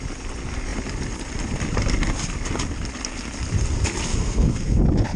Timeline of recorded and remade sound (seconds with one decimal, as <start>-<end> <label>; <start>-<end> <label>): 0.0-4.1 recorded; 4.1-4.8 remade; 4.8-5.2 recorded